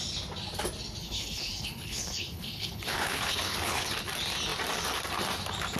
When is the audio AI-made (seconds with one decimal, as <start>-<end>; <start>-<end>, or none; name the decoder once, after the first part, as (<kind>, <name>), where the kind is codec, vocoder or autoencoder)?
1.0-3.9 (codec, HILCodec)